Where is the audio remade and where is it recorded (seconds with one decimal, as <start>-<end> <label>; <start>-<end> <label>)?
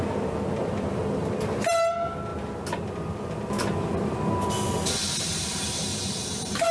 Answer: 0.0-5.3 recorded; 5.3-6.1 remade; 6.1-6.7 recorded